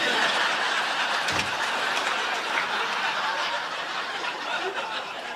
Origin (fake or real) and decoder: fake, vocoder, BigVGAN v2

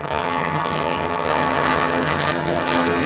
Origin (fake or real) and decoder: fake, vocoder, HiFi-GAN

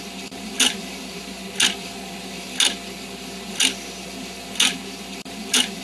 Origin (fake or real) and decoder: real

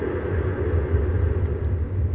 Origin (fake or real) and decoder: real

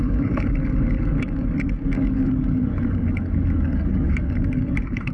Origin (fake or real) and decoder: fake, codec, DAC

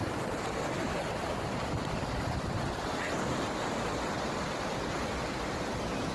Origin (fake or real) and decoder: real